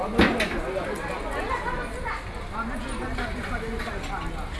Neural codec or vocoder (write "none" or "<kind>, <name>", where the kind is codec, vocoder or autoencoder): none